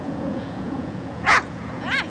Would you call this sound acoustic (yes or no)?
no